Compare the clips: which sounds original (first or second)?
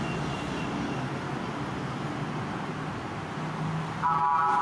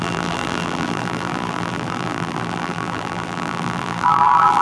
first